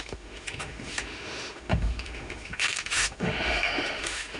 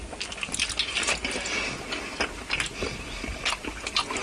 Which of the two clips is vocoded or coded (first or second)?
first